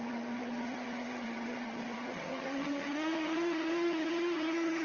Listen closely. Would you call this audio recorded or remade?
remade